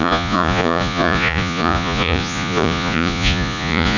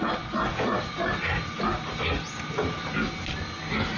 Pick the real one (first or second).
second